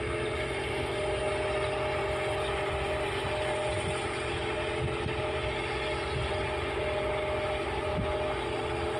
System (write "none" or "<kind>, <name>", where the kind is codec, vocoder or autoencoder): none